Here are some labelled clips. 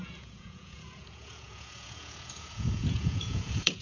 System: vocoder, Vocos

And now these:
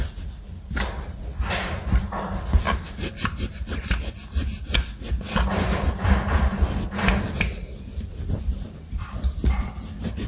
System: none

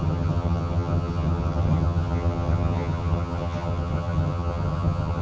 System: vocoder, HiFi-GAN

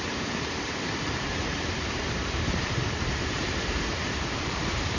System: vocoder, BigVGAN v2